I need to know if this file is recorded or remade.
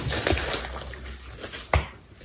recorded